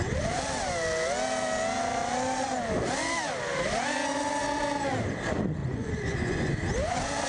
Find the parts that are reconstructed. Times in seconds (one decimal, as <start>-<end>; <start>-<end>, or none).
5.6-6.5